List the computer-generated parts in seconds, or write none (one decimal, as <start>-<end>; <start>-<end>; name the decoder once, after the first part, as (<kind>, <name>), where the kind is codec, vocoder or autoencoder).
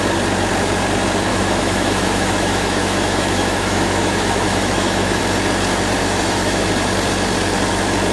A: 1.3-5.2 (autoencoder, DAC-VAE); 6.0-6.7